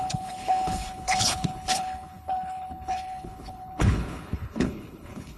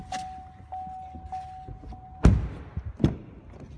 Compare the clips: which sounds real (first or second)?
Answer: second